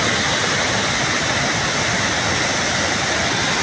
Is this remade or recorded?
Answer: recorded